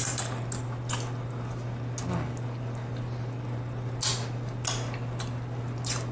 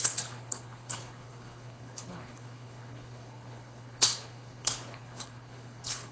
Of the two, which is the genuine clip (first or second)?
first